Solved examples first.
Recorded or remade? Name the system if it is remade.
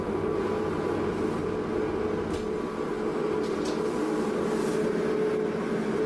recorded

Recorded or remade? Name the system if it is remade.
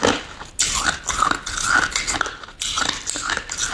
recorded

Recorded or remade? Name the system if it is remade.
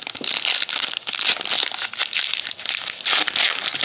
recorded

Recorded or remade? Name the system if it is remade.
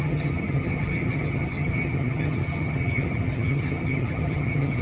remade, vocoder, HiFi-GAN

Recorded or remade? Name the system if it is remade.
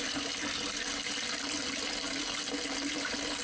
recorded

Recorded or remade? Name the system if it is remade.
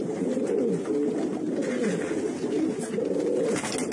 recorded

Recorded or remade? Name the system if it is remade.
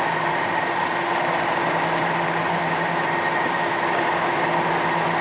recorded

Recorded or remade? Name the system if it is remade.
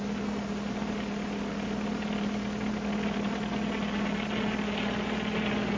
recorded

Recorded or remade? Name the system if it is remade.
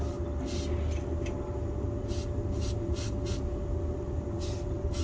recorded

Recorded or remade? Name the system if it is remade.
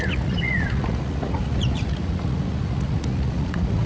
remade, vocoder, Vocos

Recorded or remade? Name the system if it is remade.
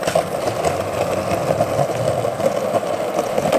recorded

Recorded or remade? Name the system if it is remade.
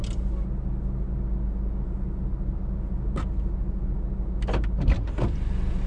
recorded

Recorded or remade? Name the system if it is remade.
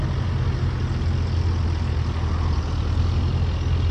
recorded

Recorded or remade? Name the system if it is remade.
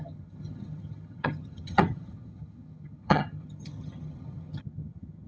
remade, vocoder, HiFi-GAN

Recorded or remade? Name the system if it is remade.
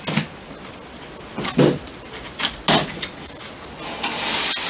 recorded